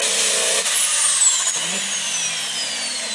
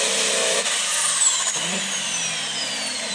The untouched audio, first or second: first